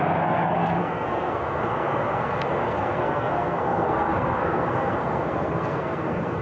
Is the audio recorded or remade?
remade